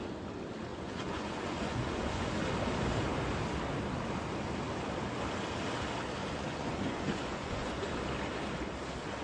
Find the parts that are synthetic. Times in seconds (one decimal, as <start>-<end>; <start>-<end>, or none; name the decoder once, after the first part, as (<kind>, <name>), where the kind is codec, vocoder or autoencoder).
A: 0.7-2.3 (vocoder, Vocos); 6.2-7.9